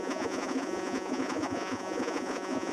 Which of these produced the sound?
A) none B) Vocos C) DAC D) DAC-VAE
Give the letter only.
B